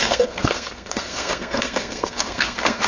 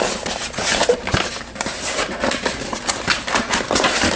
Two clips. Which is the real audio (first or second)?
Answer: second